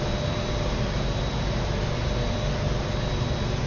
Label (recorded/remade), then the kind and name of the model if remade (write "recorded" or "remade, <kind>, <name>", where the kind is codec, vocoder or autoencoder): recorded